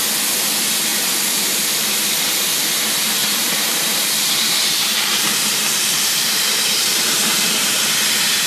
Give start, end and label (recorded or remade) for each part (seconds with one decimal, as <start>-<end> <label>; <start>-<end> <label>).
0.0-0.9 recorded; 0.9-2.1 remade; 2.1-3.2 recorded; 3.2-7.9 remade; 7.9-8.5 recorded